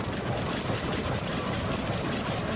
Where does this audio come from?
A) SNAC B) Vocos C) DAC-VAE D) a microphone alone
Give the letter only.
D